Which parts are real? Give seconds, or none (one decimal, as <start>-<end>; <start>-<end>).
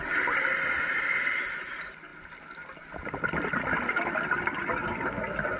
0.0-5.6